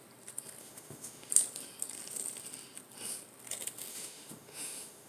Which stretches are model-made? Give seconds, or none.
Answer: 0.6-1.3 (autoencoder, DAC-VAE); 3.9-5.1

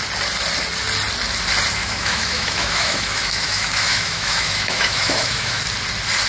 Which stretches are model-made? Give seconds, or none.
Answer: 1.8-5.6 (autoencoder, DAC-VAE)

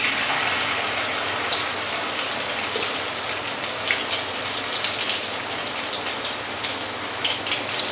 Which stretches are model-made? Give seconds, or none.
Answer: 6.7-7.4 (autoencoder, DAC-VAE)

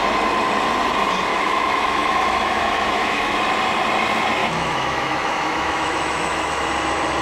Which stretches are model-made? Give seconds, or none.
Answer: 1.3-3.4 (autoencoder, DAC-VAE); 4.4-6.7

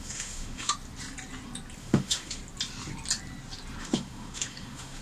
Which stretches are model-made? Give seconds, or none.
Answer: 0.0-0.7 (autoencoder, DAC-VAE); 1.8-2.4; 3.8-5.0

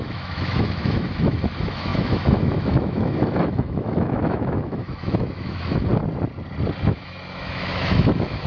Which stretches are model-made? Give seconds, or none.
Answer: 0.0-5.9 (autoencoder, DAC-VAE); 6.9-8.5

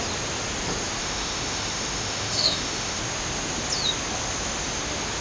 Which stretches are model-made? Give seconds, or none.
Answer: 1.0-3.0 (autoencoder, DAC-VAE)